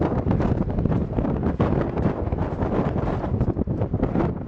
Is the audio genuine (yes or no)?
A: yes